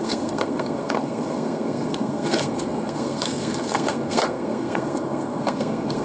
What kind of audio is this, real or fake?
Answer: fake